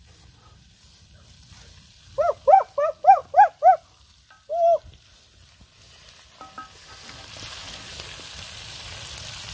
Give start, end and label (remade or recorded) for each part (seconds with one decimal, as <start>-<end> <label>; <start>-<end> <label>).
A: 0.0-9.5 recorded